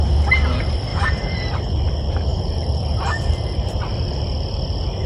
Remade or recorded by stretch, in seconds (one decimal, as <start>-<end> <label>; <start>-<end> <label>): 0.0-0.9 recorded; 0.9-1.5 remade; 1.5-2.3 recorded; 2.3-3.1 remade; 3.1-5.1 recorded